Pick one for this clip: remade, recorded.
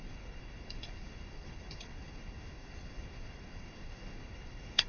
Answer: remade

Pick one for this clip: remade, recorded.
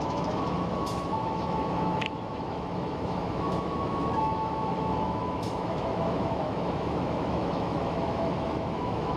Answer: remade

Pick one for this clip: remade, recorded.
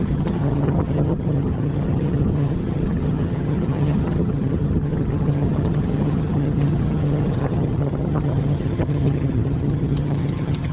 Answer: remade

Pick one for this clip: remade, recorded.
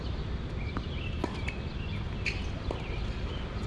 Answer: recorded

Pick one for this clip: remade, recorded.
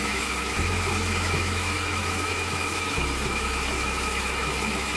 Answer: remade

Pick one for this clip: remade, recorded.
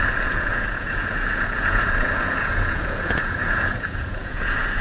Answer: remade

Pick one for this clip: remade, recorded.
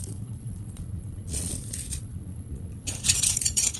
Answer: remade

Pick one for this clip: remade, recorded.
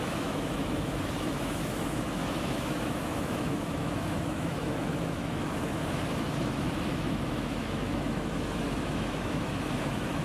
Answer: remade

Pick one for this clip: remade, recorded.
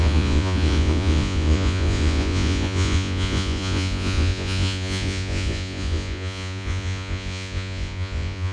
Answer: remade